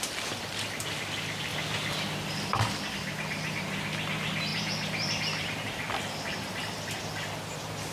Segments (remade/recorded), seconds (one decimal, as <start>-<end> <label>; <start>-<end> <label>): 0.0-4.5 recorded; 4.5-7.0 remade; 7.0-7.9 recorded